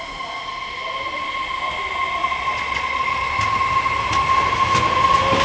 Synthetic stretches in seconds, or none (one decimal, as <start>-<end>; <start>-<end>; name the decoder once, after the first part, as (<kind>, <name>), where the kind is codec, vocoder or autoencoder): 2.2-3.3 (vocoder, Vocos)